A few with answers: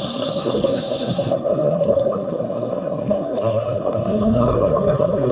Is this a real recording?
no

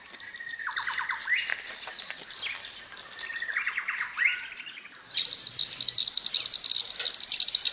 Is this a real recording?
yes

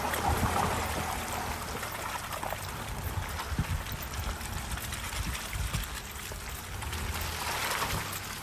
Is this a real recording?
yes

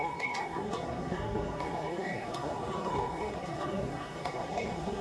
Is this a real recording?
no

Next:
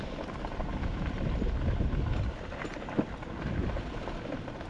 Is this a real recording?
yes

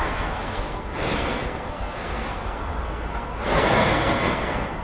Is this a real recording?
no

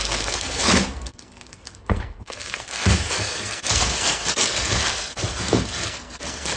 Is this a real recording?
no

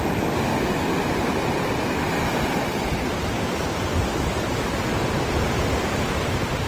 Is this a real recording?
yes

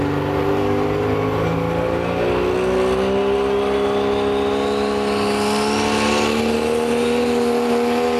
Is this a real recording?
yes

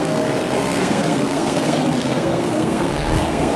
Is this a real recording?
no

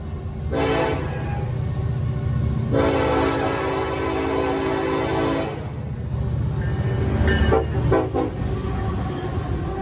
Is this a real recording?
yes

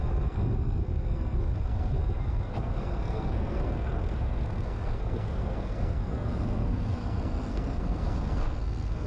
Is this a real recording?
no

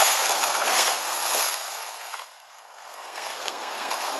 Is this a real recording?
no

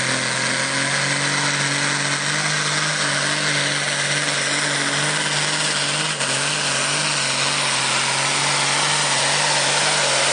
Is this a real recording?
yes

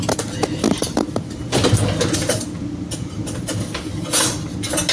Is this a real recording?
yes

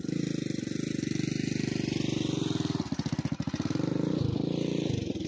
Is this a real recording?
yes